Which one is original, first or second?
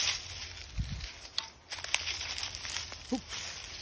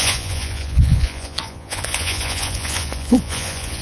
first